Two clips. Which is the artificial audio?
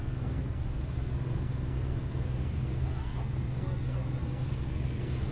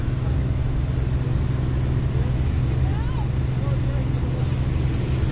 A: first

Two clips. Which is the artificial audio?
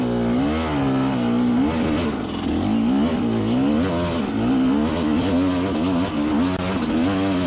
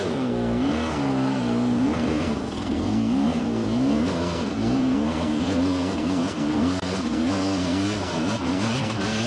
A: second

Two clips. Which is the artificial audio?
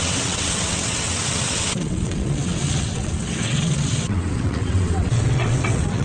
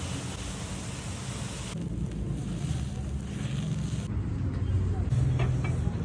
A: first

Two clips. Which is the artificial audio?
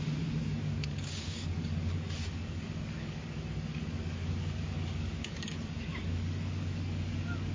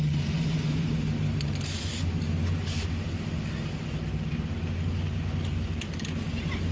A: first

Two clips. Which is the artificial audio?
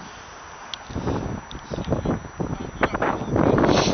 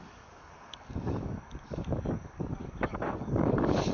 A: second